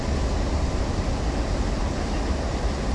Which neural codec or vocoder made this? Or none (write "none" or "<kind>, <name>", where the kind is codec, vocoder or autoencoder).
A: none